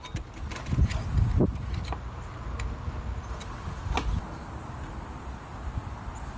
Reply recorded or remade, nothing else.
recorded